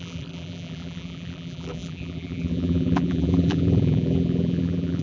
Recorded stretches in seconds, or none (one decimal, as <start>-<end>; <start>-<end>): none